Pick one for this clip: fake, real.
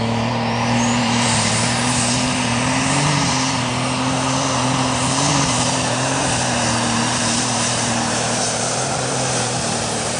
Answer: fake